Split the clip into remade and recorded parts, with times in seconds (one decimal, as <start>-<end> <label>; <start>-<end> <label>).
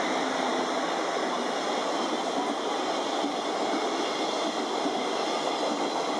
0.0-6.2 recorded